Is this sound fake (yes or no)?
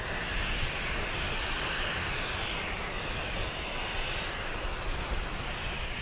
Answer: no